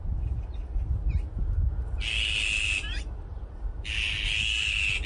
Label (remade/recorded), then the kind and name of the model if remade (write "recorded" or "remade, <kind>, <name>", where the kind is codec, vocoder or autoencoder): recorded